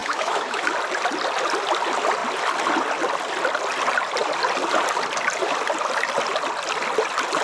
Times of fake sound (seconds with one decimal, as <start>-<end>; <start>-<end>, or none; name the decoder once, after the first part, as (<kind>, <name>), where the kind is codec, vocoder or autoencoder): 0.0-0.6 (autoencoder, DAC-VAE)